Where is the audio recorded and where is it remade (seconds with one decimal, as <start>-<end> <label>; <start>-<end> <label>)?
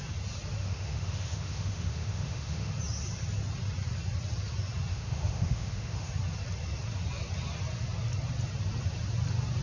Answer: 0.0-0.6 recorded; 0.6-2.7 remade; 2.7-4.9 recorded; 4.9-6.1 remade; 6.1-9.6 recorded